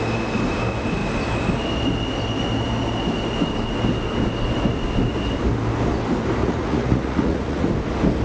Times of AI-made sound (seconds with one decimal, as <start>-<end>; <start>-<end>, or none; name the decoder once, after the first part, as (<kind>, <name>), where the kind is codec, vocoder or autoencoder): 6.4-7.7 (vocoder, Vocos)